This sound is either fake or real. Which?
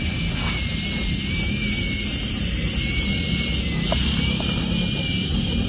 real